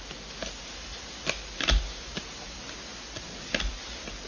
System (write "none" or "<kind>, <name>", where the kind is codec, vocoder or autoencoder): none